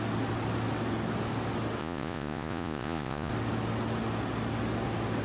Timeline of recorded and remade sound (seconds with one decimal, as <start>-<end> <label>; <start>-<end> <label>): 0.0-1.8 recorded; 1.8-3.3 remade; 3.3-5.2 recorded